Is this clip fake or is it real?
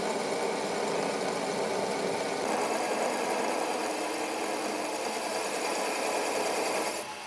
real